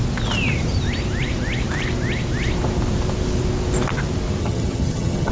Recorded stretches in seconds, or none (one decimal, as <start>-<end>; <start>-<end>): 0.0-4.4